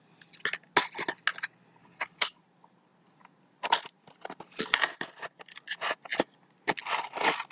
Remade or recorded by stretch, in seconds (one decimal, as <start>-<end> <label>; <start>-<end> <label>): 0.0-1.8 recorded; 1.8-2.4 remade; 2.4-7.5 recorded